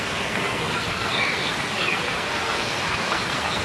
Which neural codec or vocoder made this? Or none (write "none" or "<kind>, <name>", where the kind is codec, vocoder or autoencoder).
codec, SNAC